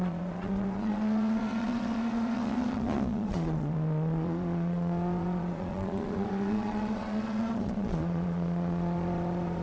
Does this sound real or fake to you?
fake